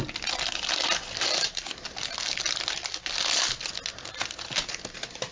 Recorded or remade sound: recorded